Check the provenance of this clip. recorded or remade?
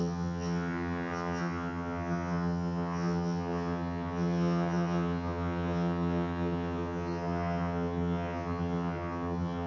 remade